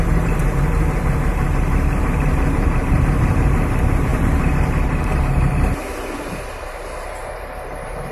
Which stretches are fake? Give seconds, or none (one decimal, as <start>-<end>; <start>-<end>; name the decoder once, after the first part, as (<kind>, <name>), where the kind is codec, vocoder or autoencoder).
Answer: 0.0-8.1 (vocoder, BigVGAN v2)